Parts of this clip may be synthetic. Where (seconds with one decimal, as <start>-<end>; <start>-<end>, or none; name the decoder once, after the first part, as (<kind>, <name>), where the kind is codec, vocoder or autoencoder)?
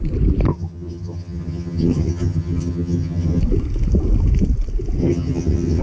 0.5-3.4 (vocoder, HiFi-GAN); 5.0-5.8